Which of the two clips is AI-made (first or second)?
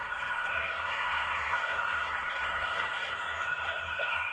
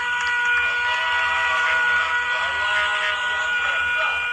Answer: first